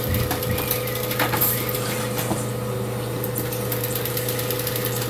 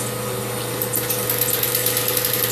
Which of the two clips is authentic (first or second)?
second